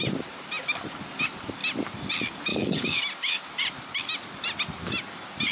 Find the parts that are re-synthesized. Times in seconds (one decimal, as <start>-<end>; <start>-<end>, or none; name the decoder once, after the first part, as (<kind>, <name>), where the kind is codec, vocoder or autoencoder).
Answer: 2.5-3.0 (codec, DAC)